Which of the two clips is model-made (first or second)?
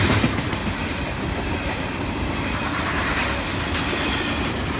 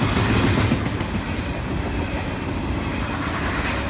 first